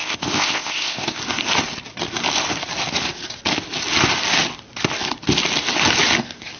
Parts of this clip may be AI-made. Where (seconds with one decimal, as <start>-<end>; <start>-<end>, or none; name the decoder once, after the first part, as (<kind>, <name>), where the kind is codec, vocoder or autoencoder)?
0.0-1.2 (codec, ZipCodec)